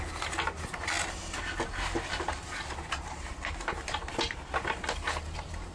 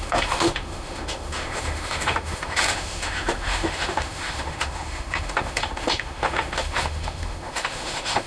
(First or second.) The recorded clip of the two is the first